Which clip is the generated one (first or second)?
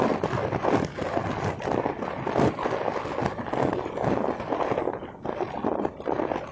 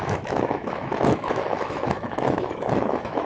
second